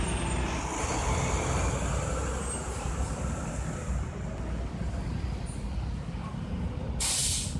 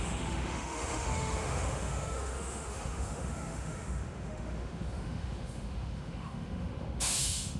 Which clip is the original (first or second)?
first